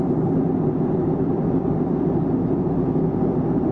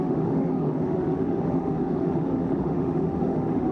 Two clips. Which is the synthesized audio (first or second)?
second